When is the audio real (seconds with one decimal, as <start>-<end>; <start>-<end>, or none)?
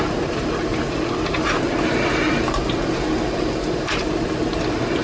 0.7-3.7